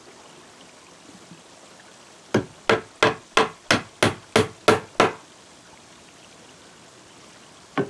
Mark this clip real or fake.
real